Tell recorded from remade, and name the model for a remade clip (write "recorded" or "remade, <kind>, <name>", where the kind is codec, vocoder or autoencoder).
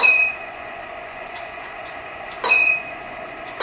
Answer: remade, vocoder, Vocos